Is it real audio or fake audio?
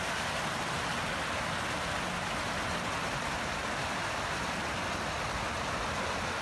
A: real